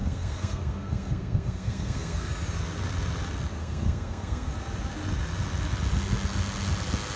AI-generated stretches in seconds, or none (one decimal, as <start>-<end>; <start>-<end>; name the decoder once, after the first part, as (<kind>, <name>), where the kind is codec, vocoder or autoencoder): 0.0-2.3 (codec, SNAC); 3.6-4.5